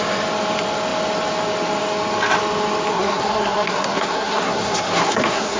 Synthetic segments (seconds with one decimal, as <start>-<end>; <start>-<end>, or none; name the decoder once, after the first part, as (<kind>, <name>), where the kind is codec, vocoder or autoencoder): 2.9-5.6 (codec, SNAC)